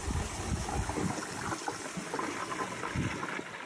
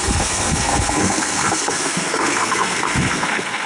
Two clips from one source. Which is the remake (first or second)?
second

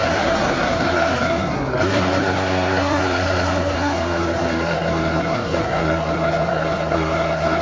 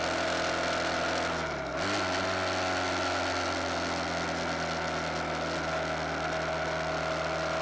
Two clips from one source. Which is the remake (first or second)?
first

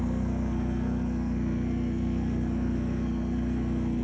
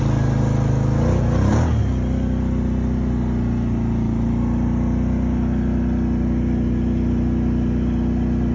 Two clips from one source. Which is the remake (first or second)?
first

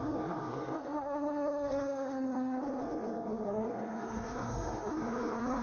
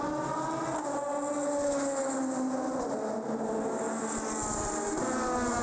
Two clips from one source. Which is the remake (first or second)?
first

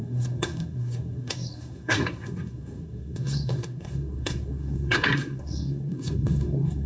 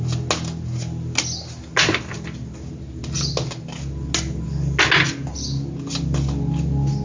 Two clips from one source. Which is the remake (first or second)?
first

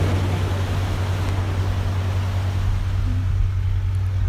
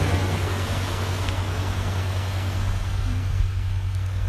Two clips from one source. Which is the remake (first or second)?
second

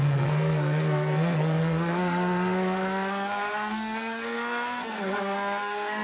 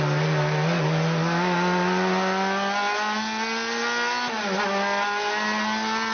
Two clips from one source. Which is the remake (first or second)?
first